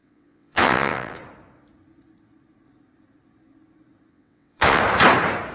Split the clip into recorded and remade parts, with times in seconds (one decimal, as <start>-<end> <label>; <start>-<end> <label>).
0.0-1.2 remade; 1.2-4.1 recorded; 4.1-4.8 remade; 4.8-5.5 recorded